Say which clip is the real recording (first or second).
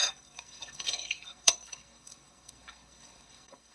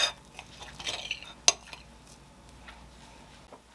second